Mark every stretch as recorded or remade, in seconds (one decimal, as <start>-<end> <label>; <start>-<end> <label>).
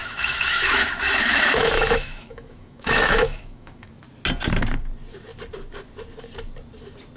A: 0.0-3.9 remade; 3.9-7.2 recorded